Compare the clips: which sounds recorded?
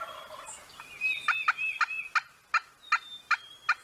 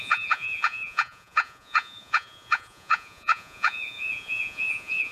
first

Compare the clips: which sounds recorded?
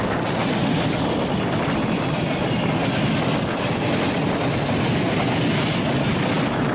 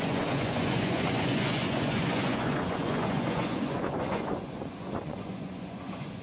first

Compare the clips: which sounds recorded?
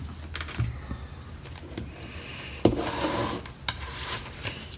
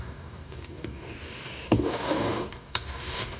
first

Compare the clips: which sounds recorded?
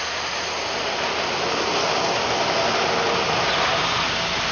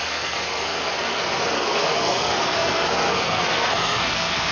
first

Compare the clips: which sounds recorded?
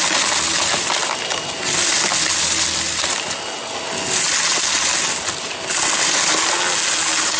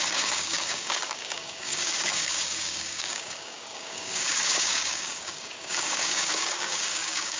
first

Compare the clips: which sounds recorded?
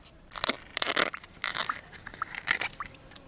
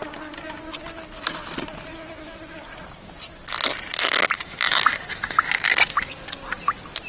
second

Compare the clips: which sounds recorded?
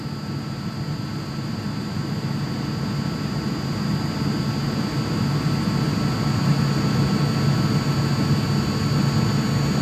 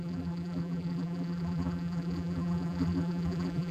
first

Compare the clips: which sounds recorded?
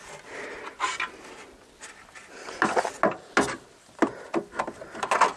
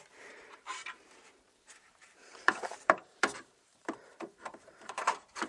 first